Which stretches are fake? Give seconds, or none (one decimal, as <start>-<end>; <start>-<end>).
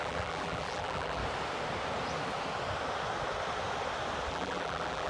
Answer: 0.0-1.2; 4.3-5.1